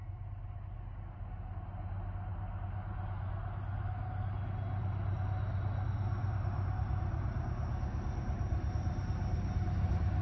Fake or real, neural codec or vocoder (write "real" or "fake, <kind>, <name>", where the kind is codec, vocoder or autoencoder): real